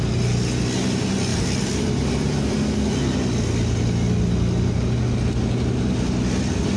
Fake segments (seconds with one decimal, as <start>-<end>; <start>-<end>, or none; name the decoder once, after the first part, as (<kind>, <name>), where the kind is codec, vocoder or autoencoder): 1.3-2.4 (vocoder, BigVGAN v2)